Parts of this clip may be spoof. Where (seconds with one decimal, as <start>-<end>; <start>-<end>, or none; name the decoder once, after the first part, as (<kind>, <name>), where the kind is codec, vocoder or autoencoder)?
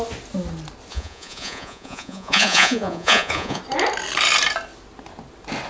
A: 0.9-3.6 (vocoder, Vocos)